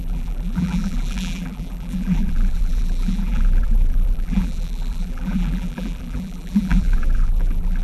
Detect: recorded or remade remade